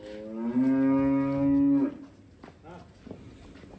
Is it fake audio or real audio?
real